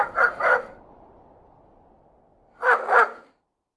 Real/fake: real